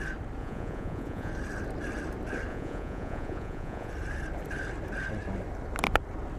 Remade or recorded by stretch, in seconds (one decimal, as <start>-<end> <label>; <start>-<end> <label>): 0.0-0.4 recorded; 0.4-1.3 remade; 1.3-2.5 recorded; 2.5-3.9 remade; 3.9-6.4 recorded